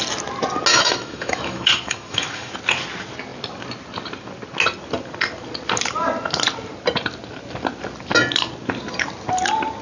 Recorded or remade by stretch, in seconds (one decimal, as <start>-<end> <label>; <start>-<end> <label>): 0.0-0.7 recorded; 0.7-2.5 remade; 2.5-9.8 recorded